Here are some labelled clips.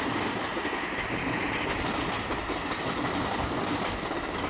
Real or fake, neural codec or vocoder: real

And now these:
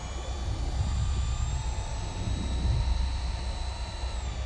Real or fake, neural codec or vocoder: real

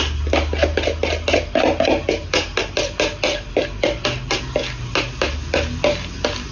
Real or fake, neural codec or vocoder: real